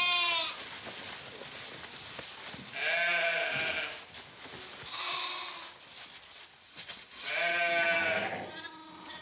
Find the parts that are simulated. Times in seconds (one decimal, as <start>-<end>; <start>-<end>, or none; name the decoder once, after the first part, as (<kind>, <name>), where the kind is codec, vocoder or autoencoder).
6.6-7.3 (vocoder, WaveNeXt)